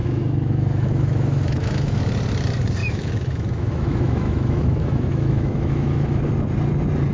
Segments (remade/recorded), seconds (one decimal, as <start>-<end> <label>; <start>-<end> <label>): 0.0-2.0 remade; 2.0-2.8 recorded; 2.8-6.2 remade; 6.2-7.1 recorded